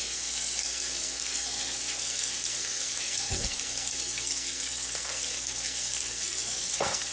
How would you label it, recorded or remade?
remade